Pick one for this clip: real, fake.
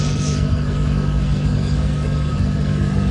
fake